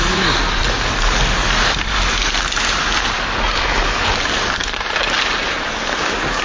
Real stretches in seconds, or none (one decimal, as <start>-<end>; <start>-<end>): 0.0-6.4